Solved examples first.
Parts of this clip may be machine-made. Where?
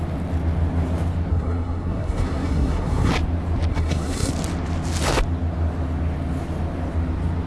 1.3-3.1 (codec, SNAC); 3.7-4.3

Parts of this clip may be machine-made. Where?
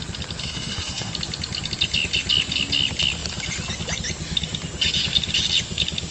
0.4-1.1 (codec, SNAC)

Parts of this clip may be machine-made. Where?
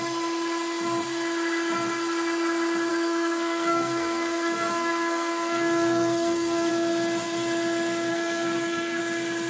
2.9-6.7 (codec, SNAC); 8.1-9.0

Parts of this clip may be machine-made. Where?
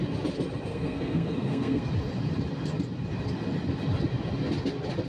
0.7-1.9 (codec, SNAC)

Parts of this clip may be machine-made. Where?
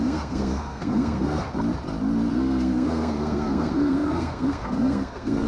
0.0-1.4 (codec, SNAC); 2.3-5.5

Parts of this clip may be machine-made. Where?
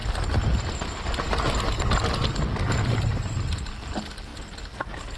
none